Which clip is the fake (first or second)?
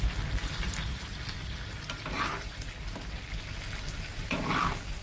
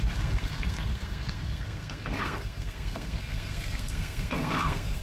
second